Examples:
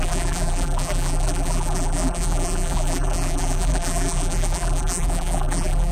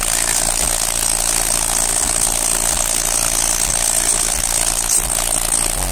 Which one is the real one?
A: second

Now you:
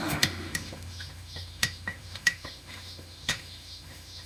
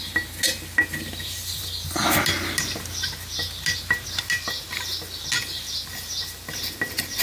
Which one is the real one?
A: second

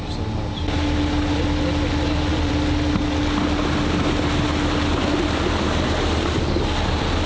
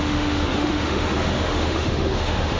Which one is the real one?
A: first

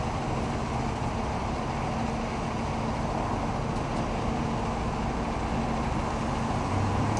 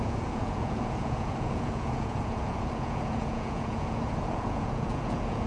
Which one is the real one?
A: first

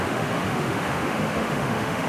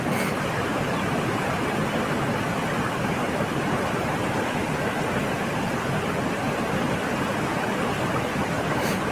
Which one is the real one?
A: second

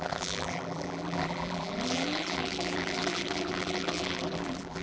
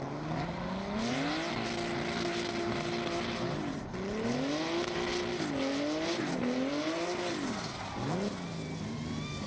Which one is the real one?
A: second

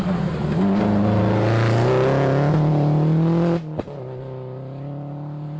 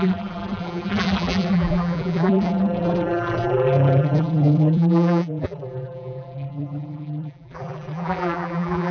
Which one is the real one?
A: first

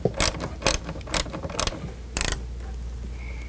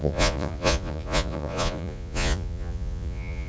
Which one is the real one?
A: first